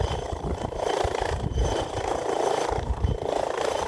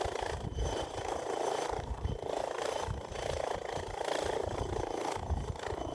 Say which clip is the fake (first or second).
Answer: first